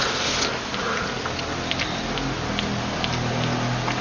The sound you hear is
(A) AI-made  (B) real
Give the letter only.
B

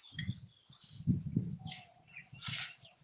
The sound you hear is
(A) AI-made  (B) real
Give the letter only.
B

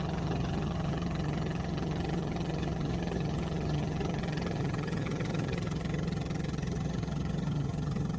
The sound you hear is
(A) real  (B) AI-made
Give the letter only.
B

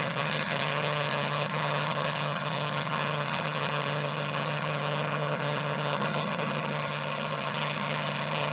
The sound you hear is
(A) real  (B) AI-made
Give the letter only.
B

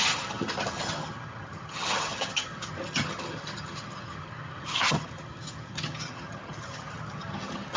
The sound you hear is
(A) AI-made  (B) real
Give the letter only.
A